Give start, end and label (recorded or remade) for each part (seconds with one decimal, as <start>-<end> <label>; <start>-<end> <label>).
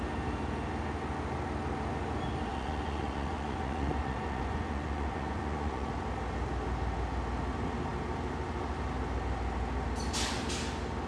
0.0-2.5 recorded; 2.5-5.9 remade; 5.9-11.1 recorded